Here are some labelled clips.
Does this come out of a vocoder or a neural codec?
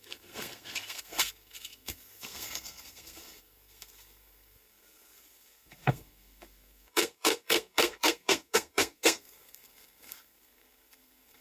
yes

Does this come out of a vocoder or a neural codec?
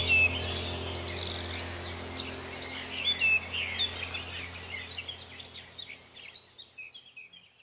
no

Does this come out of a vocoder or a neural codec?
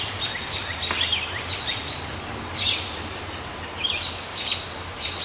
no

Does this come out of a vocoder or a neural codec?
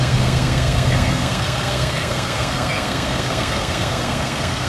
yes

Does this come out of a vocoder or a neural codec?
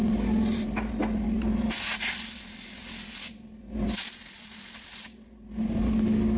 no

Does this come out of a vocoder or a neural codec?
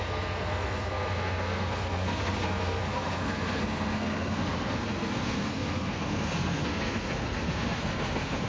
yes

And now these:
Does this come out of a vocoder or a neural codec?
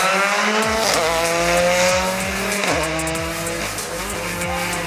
no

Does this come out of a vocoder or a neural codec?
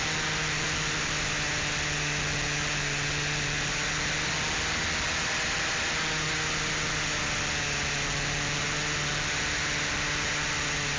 no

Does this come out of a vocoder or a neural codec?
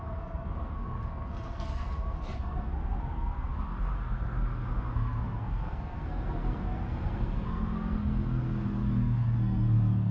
yes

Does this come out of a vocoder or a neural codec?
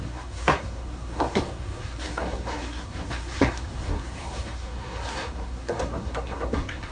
yes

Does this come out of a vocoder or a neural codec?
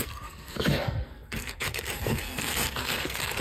yes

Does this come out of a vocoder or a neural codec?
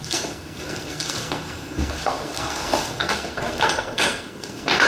yes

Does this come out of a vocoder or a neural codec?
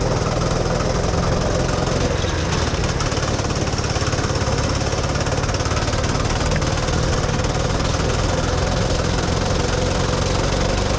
no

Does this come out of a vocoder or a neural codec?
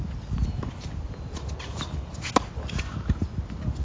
no